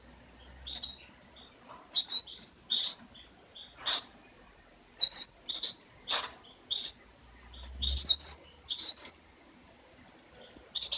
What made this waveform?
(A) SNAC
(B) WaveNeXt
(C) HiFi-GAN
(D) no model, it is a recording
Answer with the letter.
D